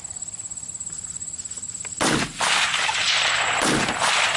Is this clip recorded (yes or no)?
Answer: yes